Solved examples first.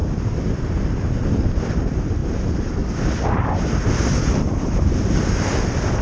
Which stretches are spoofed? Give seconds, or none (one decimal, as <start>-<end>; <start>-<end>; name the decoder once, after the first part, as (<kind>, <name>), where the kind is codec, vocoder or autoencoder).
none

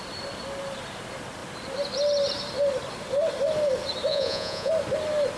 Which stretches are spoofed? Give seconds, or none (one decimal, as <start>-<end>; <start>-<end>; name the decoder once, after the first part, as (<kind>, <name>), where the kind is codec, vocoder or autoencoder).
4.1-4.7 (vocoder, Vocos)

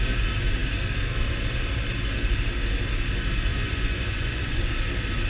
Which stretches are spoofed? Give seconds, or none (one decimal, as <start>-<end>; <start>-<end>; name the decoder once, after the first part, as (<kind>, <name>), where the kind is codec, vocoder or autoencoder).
3.5-4.7 (vocoder, Vocos)